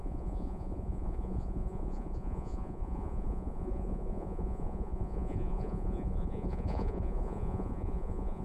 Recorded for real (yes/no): no